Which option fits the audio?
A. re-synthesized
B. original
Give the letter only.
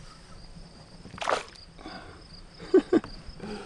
B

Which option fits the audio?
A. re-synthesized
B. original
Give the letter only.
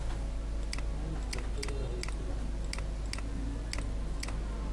B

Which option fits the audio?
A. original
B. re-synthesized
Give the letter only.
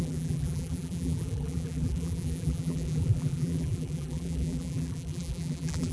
B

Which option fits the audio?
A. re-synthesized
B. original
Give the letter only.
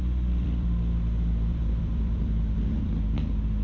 A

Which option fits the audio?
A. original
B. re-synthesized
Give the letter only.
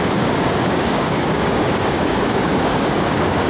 B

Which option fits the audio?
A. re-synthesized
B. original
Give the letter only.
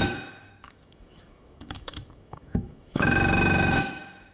A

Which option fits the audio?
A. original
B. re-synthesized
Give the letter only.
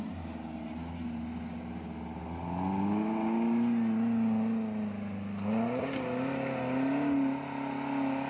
A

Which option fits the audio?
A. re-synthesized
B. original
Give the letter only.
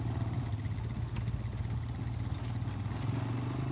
B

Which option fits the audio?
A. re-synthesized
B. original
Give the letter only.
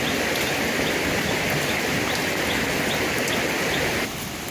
B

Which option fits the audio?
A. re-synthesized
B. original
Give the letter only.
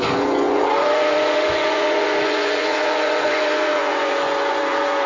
A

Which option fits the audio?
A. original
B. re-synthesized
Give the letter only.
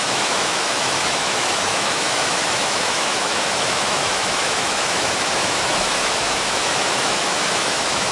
B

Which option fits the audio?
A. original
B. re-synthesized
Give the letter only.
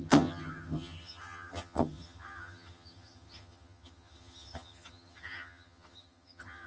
B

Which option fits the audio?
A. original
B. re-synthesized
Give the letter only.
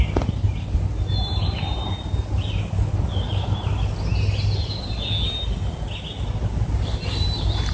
A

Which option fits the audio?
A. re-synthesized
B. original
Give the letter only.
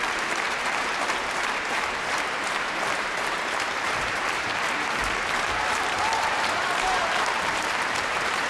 A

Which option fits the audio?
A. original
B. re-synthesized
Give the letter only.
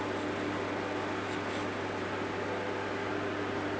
A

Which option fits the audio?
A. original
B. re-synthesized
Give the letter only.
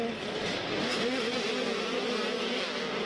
A